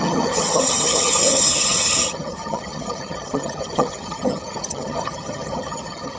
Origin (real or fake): fake